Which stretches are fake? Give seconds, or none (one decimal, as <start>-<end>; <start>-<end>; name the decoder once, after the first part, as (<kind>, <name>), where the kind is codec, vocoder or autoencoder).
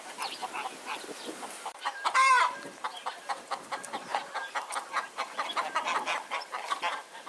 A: 0.0-0.4 (vocoder, BigVGAN v2); 1.3-4.1; 4.7-5.6; 6.3-7.3